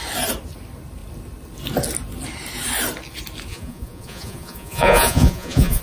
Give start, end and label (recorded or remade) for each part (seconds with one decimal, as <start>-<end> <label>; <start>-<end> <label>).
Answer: 0.0-3.5 recorded; 3.5-5.8 remade